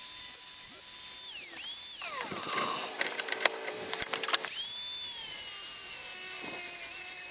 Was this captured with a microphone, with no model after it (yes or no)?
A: yes